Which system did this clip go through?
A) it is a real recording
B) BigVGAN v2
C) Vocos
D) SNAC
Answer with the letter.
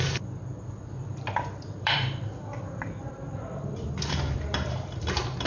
B